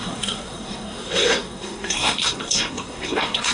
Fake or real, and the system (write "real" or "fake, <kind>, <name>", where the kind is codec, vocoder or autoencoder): fake, codec, SNAC